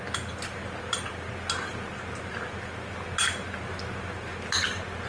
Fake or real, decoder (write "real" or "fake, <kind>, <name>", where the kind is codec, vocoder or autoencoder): real